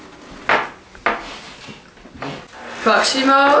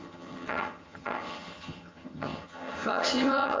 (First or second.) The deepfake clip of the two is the second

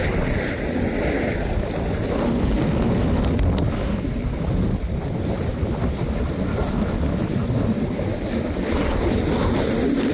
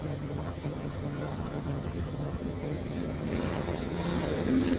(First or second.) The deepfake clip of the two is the second